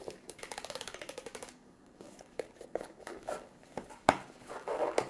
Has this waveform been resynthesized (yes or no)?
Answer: yes